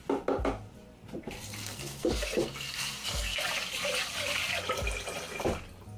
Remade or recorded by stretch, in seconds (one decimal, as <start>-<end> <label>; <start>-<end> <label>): 0.0-1.6 recorded; 1.6-3.4 remade; 3.4-6.0 recorded